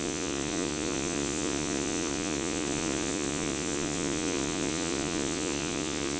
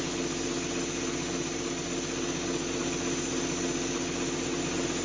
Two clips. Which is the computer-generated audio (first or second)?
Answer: first